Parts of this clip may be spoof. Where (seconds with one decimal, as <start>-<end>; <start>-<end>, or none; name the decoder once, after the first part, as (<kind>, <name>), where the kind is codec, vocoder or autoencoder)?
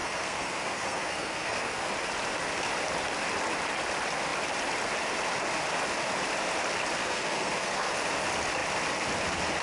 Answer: 0.0-1.9 (codec, SNAC); 7.0-7.9